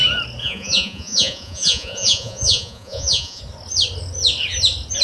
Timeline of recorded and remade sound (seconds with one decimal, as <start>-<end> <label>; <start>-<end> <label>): 0.0-0.4 recorded; 0.4-3.4 remade; 3.4-5.0 recorded